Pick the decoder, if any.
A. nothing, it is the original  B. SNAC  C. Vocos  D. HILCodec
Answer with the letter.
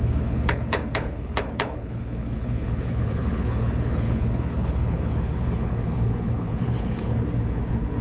D